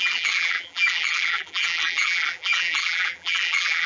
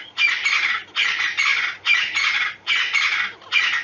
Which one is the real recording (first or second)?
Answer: second